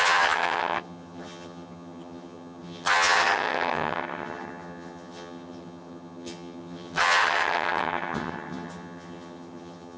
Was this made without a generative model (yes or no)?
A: no